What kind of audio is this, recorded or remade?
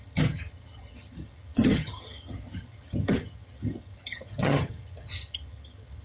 remade